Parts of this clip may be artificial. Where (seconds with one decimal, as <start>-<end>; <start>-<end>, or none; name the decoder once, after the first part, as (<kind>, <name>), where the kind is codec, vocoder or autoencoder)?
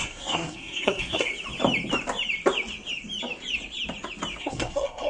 0.0-1.3 (codec, SNAC); 4.4-5.1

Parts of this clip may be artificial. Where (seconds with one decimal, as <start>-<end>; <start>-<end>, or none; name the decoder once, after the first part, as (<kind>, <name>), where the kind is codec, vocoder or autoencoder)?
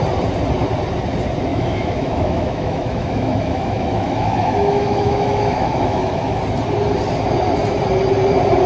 1.5-6.4 (autoencoder, DAC-VAE)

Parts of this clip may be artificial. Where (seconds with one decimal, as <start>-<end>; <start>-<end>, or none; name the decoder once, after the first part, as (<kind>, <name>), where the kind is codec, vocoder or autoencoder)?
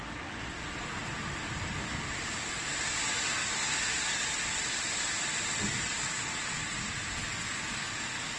none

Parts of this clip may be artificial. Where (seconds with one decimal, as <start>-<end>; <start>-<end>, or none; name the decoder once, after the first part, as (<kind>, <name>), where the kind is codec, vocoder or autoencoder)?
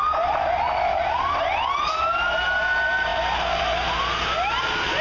none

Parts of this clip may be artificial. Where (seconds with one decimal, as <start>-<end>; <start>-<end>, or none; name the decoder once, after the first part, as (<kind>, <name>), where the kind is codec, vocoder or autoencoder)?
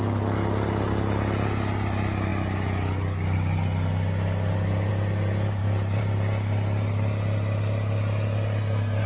5.6-6.1 (vocoder, BigVGAN v2)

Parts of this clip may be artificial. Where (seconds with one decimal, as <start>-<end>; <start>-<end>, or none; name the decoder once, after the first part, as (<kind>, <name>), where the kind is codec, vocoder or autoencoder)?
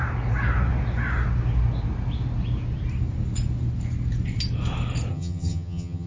5.1-6.1 (vocoder, HiFi-GAN)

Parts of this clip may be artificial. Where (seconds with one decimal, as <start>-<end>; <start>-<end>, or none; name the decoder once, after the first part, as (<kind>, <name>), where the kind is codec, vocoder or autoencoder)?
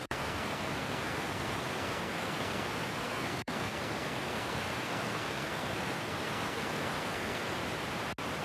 0.0-7.6 (codec, SNAC)